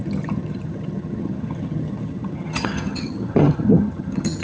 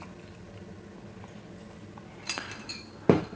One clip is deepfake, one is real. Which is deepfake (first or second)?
first